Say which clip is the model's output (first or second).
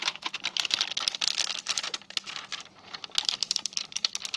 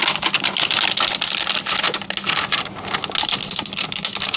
first